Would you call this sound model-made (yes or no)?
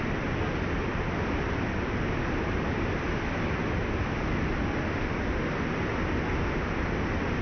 no